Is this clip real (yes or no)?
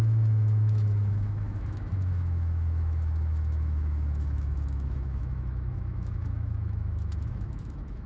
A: no